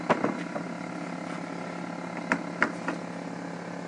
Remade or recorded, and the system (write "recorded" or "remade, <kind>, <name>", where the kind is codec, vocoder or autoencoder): recorded